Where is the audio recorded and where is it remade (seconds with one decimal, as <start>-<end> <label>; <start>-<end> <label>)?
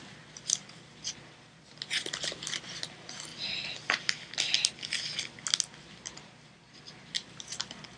0.0-8.0 recorded